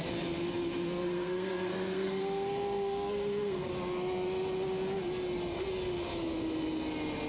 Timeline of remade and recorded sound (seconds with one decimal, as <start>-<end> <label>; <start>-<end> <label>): 0.0-1.0 recorded; 1.0-3.7 remade; 3.7-7.3 recorded